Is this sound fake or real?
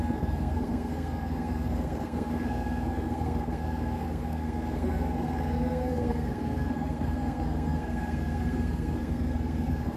fake